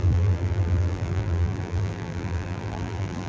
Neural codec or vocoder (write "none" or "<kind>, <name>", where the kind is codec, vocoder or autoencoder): vocoder, BigVGAN v2